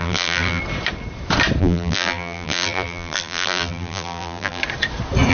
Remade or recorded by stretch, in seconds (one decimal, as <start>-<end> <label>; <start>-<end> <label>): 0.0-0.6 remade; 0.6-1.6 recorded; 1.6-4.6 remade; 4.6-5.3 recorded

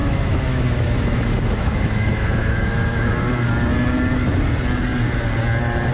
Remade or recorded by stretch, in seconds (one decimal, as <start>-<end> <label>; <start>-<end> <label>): 0.0-3.5 remade; 3.5-5.9 recorded

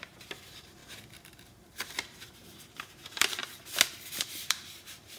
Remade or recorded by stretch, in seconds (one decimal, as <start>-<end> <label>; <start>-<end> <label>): 0.0-3.4 remade; 3.4-4.1 recorded; 4.1-5.2 remade